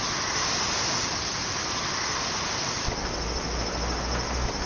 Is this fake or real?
real